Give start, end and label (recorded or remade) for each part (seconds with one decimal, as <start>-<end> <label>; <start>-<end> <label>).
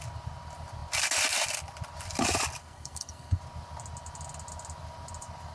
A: 0.0-2.6 recorded; 2.6-3.4 remade; 3.4-5.5 recorded